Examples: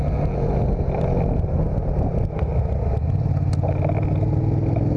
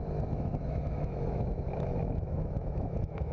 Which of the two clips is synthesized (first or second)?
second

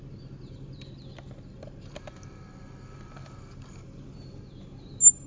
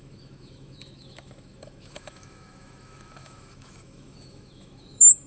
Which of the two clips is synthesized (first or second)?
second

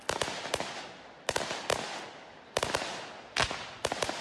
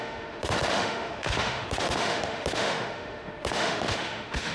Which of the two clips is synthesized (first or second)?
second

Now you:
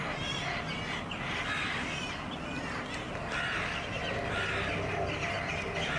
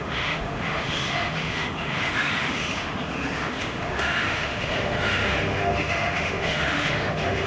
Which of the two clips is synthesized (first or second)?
second